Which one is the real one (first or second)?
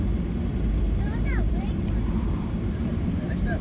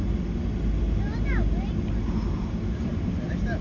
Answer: second